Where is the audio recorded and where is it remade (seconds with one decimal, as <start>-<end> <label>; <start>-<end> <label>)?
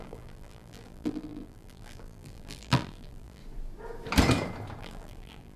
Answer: 0.0-3.4 remade; 3.4-4.8 recorded; 4.8-5.6 remade